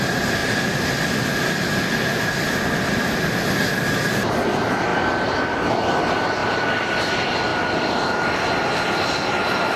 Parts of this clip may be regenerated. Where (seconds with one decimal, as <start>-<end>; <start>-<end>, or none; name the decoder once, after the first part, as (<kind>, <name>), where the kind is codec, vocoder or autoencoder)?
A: 0.4-1.2 (vocoder, BigVGAN v2); 6.4-6.9